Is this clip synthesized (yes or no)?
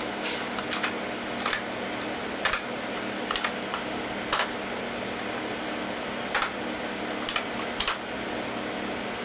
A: no